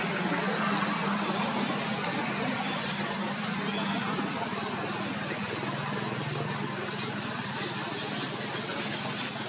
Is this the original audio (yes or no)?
yes